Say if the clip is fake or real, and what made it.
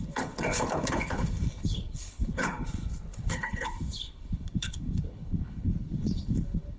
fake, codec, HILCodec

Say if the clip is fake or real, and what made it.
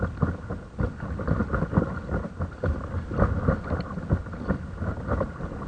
real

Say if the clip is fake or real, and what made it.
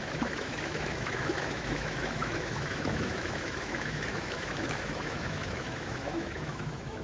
fake, autoencoder, DAC-VAE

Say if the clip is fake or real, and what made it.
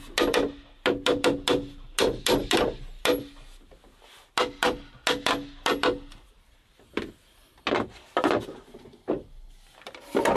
real